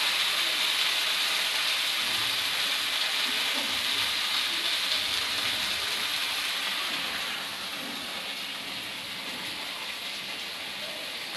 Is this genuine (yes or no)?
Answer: yes